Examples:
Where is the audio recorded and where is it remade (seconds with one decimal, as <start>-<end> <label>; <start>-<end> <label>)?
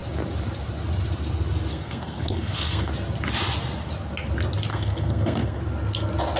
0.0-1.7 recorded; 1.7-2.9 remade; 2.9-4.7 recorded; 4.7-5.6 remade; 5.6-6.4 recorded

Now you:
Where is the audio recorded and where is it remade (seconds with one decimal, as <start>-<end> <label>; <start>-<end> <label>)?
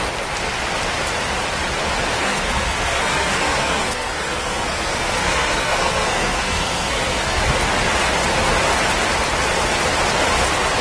0.0-2.2 recorded; 2.2-7.4 remade; 7.4-10.8 recorded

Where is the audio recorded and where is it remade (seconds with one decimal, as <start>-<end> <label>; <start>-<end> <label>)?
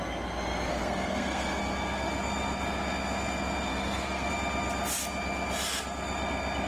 0.0-0.7 recorded; 0.7-1.6 remade; 1.6-3.7 recorded; 3.7-4.3 remade; 4.3-6.7 recorded